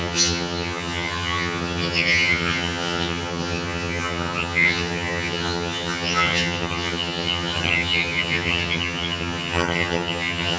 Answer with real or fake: fake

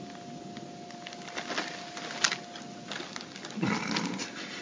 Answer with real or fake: real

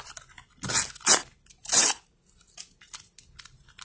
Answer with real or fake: real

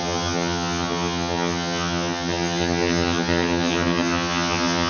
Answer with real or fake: fake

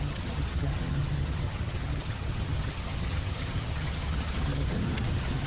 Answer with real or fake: fake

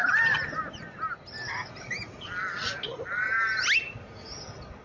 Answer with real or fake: real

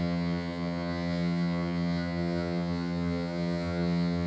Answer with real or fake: fake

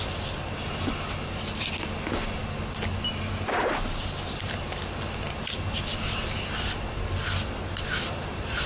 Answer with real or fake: real